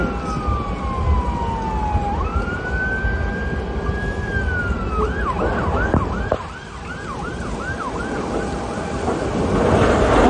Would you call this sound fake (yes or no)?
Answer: no